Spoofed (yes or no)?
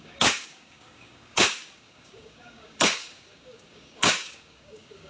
yes